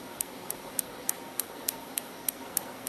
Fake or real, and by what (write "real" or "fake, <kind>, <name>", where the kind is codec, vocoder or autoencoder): fake, codec, SNAC